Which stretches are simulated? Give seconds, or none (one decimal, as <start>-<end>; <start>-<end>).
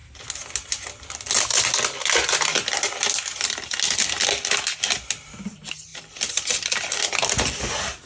none